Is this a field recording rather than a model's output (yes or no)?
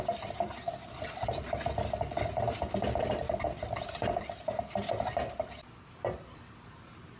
yes